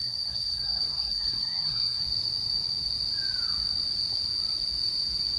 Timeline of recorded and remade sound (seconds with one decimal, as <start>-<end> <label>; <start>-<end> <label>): 0.0-2.0 remade; 2.0-5.4 recorded

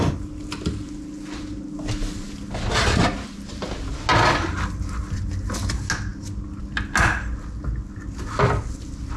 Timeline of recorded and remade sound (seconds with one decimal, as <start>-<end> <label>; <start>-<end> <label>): 0.0-9.2 recorded

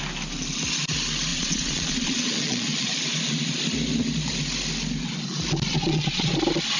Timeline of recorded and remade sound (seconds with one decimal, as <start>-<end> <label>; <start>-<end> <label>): 0.0-1.3 recorded; 1.3-2.9 remade; 2.9-5.7 recorded; 5.7-6.3 remade; 6.3-6.8 recorded

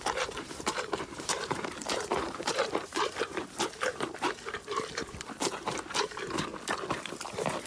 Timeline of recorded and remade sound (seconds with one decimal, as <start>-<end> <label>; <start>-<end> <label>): 0.0-6.5 remade; 6.5-7.3 recorded; 7.3-7.7 remade